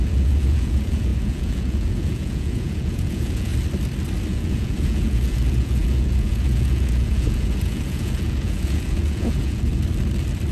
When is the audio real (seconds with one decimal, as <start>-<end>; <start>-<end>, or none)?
3.5-4.3; 9.7-10.5